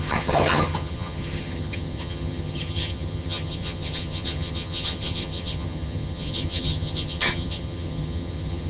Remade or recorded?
remade